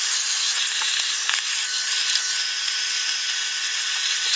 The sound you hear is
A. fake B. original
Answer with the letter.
B